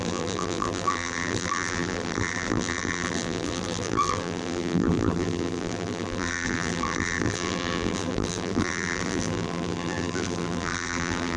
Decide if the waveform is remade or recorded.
remade